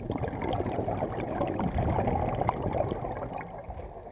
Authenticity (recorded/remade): recorded